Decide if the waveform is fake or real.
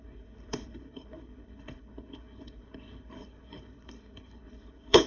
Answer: fake